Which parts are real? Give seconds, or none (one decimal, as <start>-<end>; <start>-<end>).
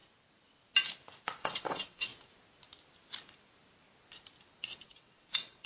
0.0-1.4; 2.1-4.8